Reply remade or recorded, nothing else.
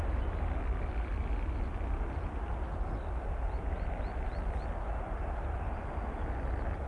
recorded